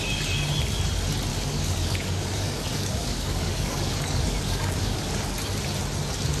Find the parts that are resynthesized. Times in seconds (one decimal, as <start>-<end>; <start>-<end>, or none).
1.3-5.1